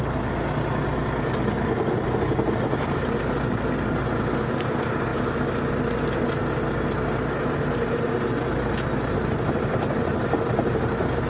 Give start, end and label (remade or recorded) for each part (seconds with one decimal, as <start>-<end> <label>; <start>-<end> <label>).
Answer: 0.0-11.3 recorded